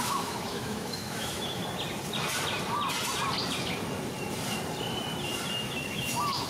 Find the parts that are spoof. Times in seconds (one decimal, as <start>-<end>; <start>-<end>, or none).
0.0-1.6; 5.5-6.5